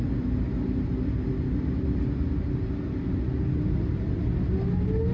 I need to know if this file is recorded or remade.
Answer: recorded